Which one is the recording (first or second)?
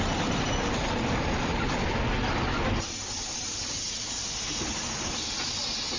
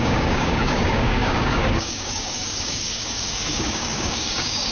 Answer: first